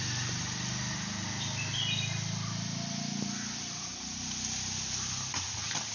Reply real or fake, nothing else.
real